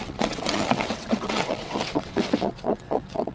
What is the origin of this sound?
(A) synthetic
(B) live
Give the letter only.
A